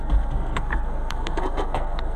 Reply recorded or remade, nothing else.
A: remade